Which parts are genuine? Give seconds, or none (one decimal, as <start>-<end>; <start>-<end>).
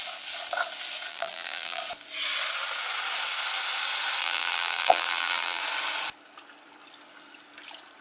0.0-1.1; 1.8-4.2; 5.6-8.0